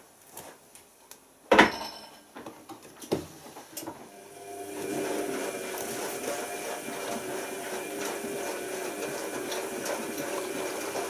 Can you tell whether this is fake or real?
real